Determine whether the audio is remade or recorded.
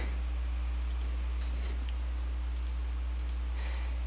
recorded